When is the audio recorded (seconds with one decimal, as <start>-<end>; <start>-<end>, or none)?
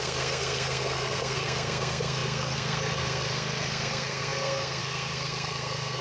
none